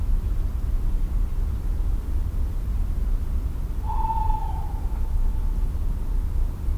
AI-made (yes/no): no